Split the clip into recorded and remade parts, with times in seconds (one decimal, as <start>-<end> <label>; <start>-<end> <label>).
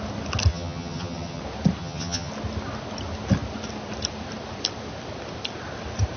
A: 0.0-0.5 recorded; 0.5-1.4 remade; 1.4-1.8 recorded; 1.8-2.3 remade; 2.3-6.2 recorded